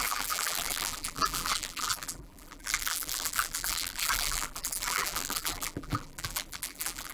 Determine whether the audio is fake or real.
fake